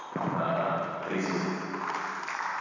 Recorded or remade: recorded